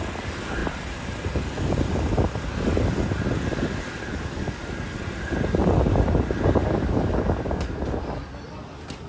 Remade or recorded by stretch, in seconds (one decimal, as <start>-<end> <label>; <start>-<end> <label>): 0.0-4.1 recorded; 4.1-4.6 remade; 4.6-6.6 recorded; 6.6-8.0 remade; 8.0-9.1 recorded